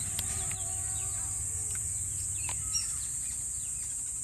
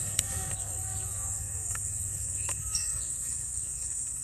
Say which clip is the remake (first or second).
second